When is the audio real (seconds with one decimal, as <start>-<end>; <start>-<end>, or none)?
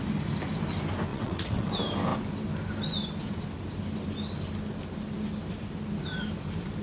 0.0-1.1; 1.7-6.8